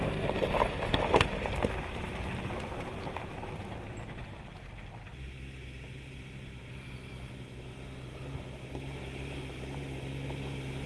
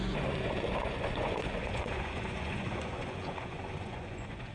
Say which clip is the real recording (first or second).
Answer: first